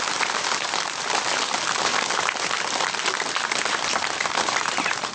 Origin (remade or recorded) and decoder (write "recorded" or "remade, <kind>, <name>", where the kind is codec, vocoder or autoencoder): recorded